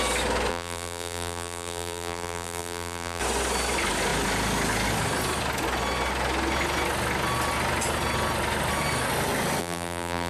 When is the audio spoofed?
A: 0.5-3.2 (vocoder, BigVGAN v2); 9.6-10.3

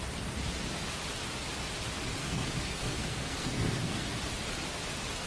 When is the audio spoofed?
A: 2.2-4.1 (codec, SNAC)